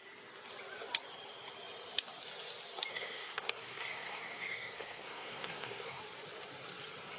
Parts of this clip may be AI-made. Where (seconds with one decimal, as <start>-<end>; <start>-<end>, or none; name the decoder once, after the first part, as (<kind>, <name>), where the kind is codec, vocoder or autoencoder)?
2.9-6.0 (codec, SNAC)